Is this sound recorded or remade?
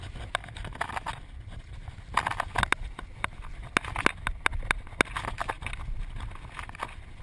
recorded